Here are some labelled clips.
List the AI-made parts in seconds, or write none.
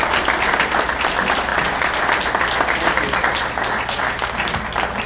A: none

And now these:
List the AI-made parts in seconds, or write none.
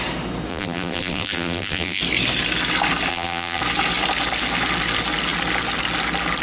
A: 0.5-2.0 (vocoder, BigVGAN v2); 3.1-3.6